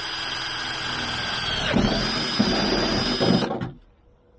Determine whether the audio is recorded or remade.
recorded